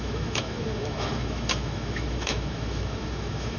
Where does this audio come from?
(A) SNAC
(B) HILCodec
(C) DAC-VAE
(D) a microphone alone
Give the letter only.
C